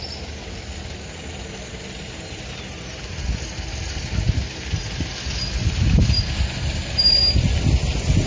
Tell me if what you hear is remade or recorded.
recorded